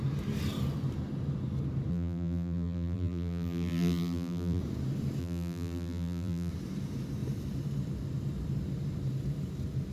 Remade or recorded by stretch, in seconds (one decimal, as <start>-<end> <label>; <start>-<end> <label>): 0.0-1.9 recorded; 1.9-4.6 remade; 4.6-5.2 recorded; 5.2-6.5 remade; 6.5-9.9 recorded

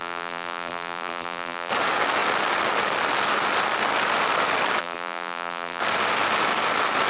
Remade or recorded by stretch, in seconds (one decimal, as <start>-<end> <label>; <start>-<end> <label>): 0.0-1.7 remade; 1.7-4.8 recorded; 4.8-5.8 remade; 5.8-7.1 recorded